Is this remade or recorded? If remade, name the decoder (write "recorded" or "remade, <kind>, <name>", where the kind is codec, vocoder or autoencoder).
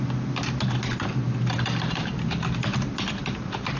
remade, vocoder, BigVGAN v2